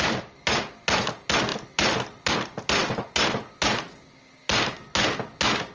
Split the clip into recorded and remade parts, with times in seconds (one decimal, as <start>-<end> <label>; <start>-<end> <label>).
0.0-5.7 recorded